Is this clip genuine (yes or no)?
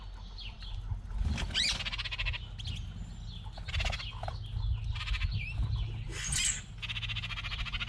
yes